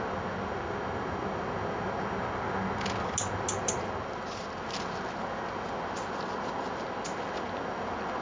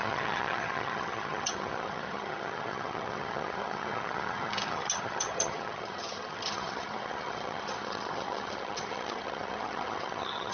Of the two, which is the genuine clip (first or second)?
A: first